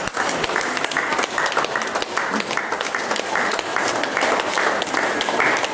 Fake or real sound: real